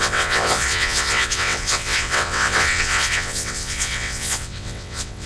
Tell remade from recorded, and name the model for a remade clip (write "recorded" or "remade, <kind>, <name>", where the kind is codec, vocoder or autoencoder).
remade, vocoder, WaveNeXt